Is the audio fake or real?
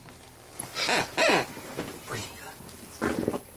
real